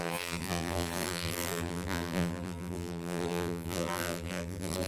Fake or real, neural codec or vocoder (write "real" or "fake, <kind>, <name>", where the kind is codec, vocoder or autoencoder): fake, vocoder, BigVGAN v2